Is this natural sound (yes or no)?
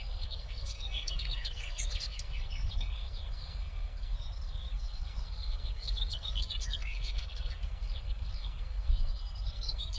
no